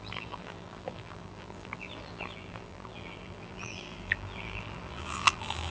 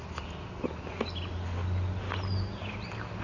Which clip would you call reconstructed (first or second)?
first